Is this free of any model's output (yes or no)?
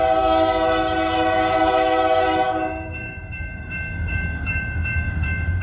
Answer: no